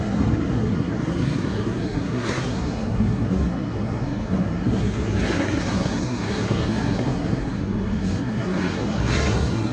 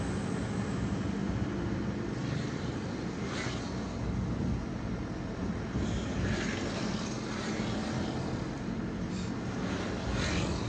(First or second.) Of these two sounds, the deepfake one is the first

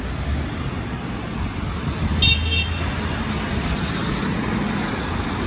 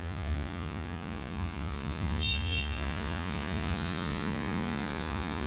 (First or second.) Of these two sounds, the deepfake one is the second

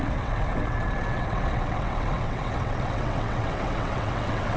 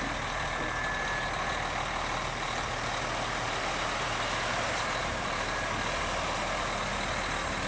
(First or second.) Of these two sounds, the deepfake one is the first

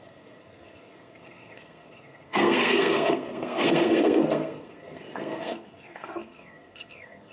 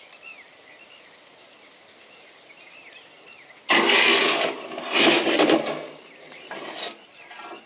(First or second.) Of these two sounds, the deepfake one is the first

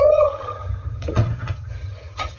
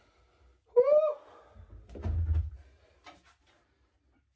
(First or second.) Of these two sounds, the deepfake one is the first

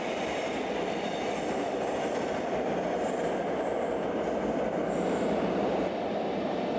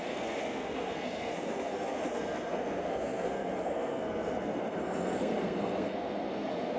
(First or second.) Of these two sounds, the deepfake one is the second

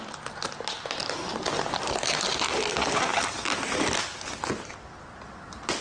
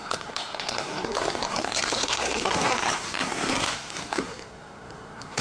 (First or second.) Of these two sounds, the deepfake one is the second